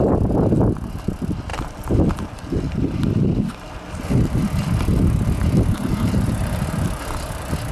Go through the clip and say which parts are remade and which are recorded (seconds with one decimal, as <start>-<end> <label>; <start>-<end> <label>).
0.0-7.7 recorded